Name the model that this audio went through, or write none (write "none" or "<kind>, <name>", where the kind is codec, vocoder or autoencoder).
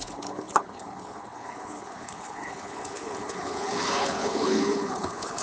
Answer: codec, HILCodec